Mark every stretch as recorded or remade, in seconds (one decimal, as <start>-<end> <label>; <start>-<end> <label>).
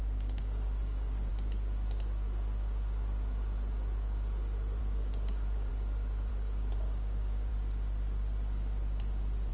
0.0-1.3 remade; 1.3-4.8 recorded; 4.8-5.7 remade; 5.7-6.3 recorded; 6.3-7.5 remade; 7.5-9.5 recorded